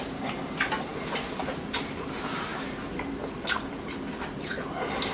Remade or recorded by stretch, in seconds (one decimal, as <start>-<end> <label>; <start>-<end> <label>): 0.0-2.5 remade; 2.5-4.3 recorded; 4.3-5.1 remade